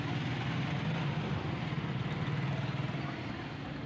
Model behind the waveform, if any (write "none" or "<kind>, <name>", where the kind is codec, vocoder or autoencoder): none